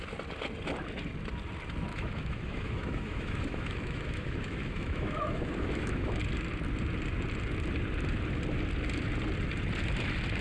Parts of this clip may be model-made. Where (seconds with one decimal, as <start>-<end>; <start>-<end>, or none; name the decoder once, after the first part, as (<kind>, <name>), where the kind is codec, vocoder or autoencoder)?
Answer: 1.9-6.2 (autoencoder, DAC-VAE)